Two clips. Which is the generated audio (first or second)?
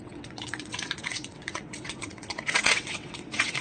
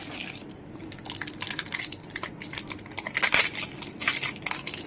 first